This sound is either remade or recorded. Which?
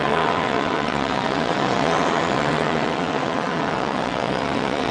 remade